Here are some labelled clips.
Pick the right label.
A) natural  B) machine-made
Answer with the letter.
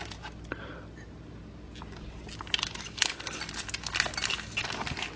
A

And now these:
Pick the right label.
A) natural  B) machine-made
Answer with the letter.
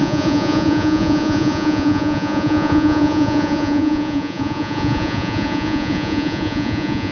B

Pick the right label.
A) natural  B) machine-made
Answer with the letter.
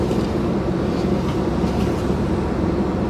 A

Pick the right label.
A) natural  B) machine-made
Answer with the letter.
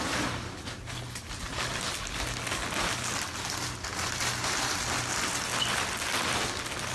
A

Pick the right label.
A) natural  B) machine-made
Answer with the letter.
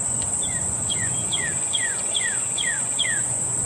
B